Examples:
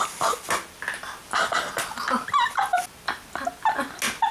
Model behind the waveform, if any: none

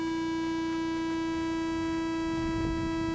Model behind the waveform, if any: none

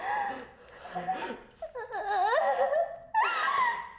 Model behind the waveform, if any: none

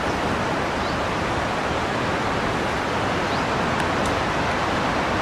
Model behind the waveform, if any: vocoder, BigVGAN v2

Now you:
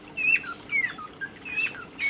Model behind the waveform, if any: none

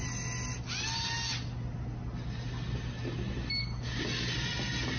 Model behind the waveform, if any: none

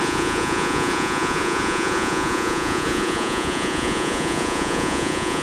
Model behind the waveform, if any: vocoder, Vocos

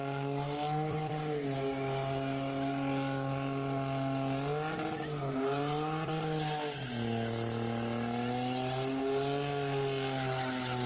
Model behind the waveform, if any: none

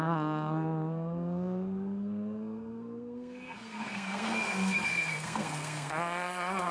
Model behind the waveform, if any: codec, SNAC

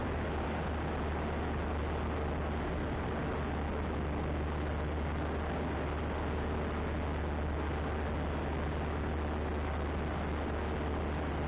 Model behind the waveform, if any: none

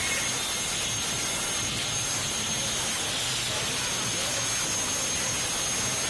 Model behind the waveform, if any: none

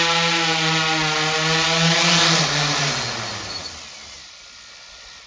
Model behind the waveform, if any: none